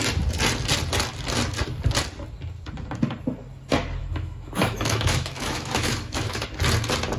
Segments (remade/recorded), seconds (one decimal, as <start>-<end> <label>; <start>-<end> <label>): 0.0-4.0 recorded; 4.0-6.4 remade; 6.4-7.2 recorded